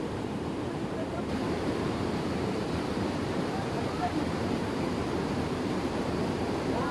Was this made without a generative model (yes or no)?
no